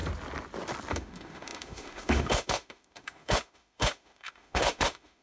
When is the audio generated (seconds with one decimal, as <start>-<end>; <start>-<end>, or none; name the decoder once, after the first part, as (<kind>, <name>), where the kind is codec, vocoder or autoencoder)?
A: 0.9-5.2 (autoencoder, DAC-VAE)